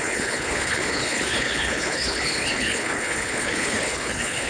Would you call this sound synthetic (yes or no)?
yes